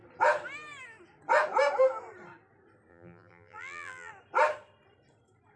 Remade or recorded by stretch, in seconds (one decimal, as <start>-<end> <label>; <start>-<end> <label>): 0.0-2.9 recorded; 2.9-4.1 remade; 4.1-5.6 recorded